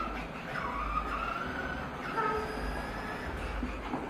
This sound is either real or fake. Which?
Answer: real